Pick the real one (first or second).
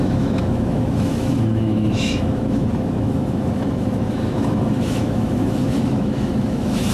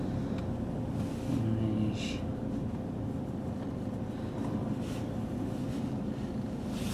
second